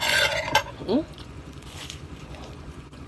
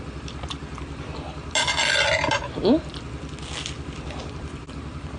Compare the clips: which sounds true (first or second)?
second